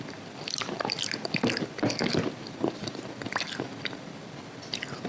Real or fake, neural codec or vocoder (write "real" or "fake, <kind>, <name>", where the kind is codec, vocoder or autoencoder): real